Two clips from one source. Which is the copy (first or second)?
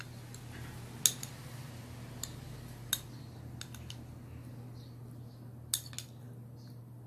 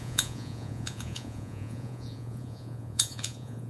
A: second